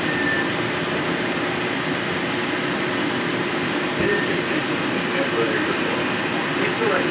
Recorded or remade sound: recorded